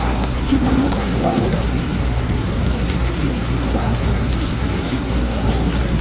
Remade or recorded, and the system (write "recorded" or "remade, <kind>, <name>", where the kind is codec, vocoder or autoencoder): remade, codec, SNAC